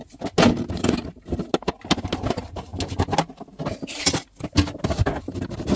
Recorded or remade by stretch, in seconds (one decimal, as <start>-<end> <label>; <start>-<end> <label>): 0.0-5.8 recorded